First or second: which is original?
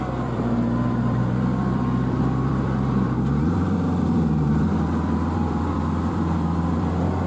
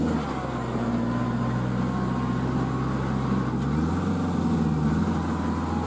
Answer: second